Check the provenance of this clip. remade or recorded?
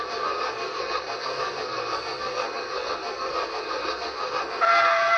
remade